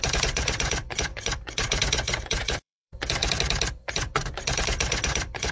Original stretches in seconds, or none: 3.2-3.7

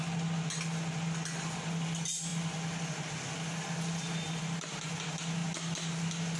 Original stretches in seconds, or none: 0.0-6.4

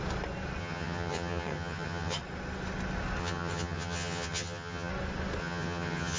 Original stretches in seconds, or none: 0.0-0.6; 2.2-3.2; 4.9-5.4

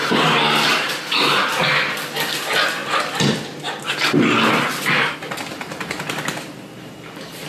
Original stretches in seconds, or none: 0.0-7.5

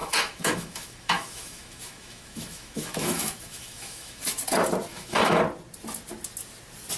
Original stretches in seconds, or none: 4.2-4.9; 5.4-7.0

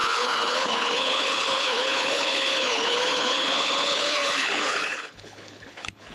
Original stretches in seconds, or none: none

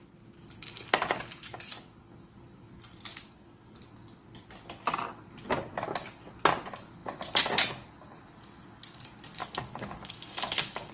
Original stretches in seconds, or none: 0.0-3.1; 3.8-9.4

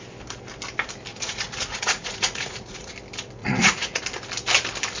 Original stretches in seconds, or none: 0.0-1.1; 2.9-3.4; 4.0-5.0